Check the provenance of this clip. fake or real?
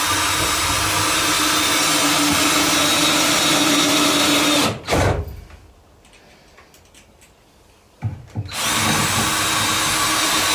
real